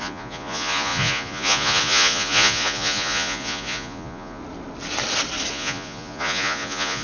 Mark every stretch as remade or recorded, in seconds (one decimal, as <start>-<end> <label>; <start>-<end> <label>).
0.0-4.4 remade; 4.4-5.5 recorded; 5.5-7.0 remade